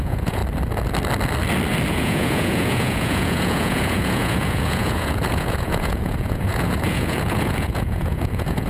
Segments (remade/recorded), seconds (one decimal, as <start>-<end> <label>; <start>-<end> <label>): 0.0-0.4 remade; 0.4-1.9 recorded; 1.9-8.7 remade